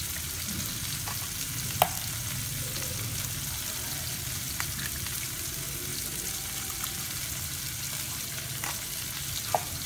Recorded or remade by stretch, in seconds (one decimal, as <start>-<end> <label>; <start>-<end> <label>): 0.0-9.9 recorded